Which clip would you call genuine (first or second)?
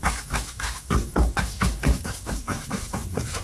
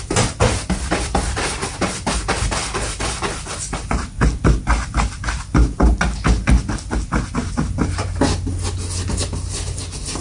second